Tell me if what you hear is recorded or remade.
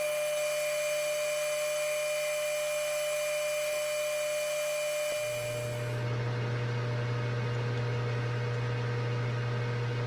recorded